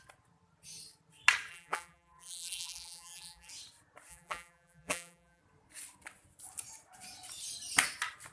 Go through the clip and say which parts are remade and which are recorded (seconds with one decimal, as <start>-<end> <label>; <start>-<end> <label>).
0.0-1.5 recorded; 1.5-3.5 remade; 3.5-4.1 recorded; 4.1-5.4 remade; 5.4-8.3 recorded